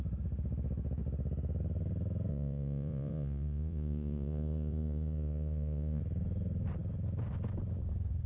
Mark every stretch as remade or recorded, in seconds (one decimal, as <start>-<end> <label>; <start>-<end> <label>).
0.0-2.3 recorded; 2.3-6.0 remade; 6.0-8.3 recorded